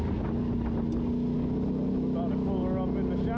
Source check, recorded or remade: recorded